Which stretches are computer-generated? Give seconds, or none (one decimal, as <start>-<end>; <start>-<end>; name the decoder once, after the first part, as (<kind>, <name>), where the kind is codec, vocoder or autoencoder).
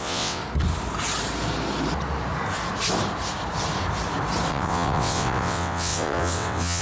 0.0-0.4 (vocoder, WaveNeXt); 4.5-6.8